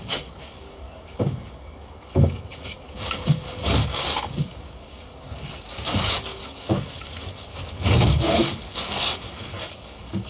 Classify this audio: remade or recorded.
remade